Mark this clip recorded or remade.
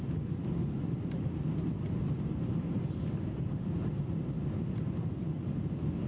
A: recorded